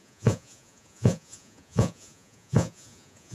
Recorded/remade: remade